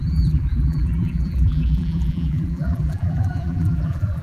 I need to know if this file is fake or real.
fake